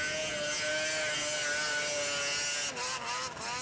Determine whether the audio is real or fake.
real